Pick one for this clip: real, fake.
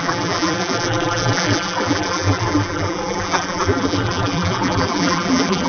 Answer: fake